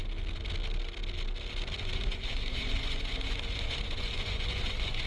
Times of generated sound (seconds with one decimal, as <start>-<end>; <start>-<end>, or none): 1.8-5.1

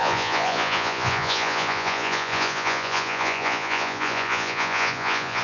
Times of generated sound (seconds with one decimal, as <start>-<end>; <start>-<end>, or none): 0.0-5.4

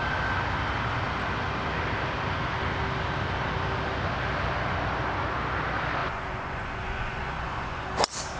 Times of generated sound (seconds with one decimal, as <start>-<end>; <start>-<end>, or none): 6.0-7.9

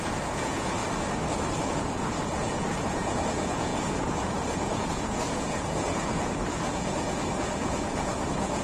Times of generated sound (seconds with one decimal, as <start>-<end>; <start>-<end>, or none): 0.0-0.8; 1.6-8.6

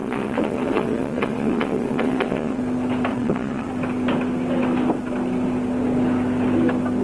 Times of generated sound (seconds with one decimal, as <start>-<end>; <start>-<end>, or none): 0.0-2.6; 3.1-3.7